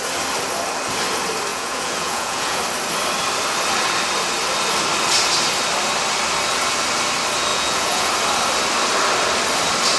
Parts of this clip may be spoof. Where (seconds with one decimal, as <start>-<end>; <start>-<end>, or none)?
1.5-2.6; 7.5-8.1